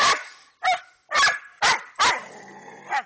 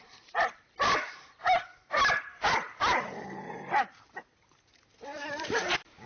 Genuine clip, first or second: first